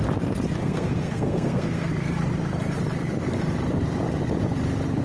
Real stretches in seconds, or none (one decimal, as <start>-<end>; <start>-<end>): 0.0-0.6; 1.9-5.0